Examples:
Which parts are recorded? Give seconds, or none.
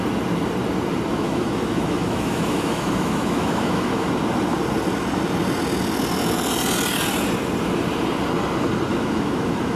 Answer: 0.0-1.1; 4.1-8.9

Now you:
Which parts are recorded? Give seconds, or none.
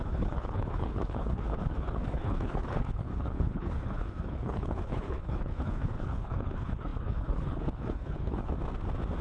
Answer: 8.5-9.2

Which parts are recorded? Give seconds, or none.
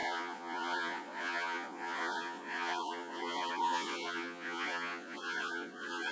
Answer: none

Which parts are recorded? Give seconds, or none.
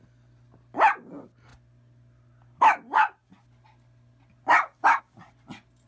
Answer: 0.0-5.9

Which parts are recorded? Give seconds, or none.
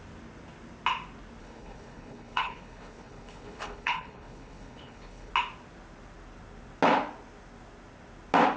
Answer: 0.0-1.4; 5.3-8.6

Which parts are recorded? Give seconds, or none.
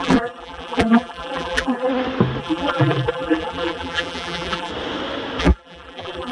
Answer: 1.9-2.4; 4.7-5.4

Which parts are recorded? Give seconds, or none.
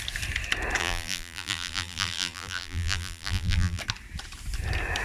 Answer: 0.0-0.8; 3.8-5.0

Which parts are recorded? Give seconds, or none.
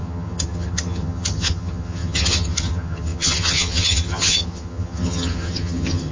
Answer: none